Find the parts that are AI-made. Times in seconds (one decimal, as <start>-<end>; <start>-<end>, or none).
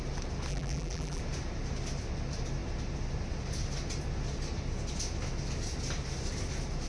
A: 0.5-1.2